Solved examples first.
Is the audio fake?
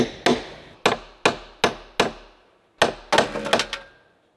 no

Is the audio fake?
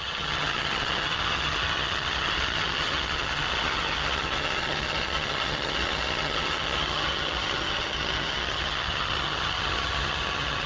yes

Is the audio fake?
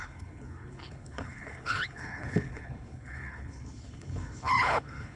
yes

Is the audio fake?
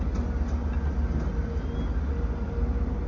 no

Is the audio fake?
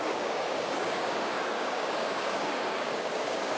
yes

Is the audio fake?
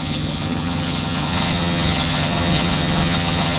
yes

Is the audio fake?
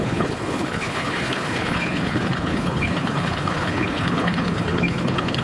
yes